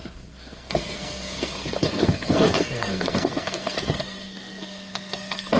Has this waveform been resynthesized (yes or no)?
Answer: yes